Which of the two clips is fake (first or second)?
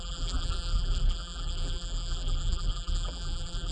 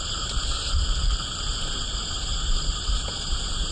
first